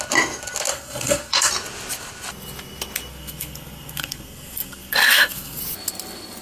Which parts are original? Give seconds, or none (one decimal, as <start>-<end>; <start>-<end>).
0.0-0.7; 1.5-3.1; 5.6-6.4